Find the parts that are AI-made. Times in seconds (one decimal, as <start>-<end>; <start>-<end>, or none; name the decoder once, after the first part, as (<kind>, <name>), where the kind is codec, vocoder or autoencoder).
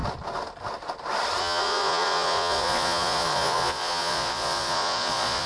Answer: 1.4-5.5 (vocoder, Vocos)